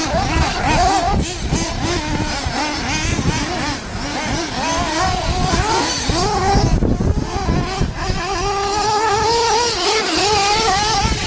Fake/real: real